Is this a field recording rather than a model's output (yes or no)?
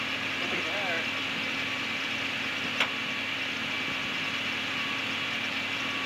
yes